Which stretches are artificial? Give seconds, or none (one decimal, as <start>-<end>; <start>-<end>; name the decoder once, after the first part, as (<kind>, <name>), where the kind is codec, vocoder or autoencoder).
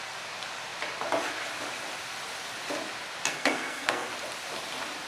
3.3-4.1 (codec, SNAC)